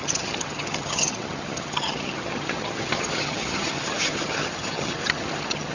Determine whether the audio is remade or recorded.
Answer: remade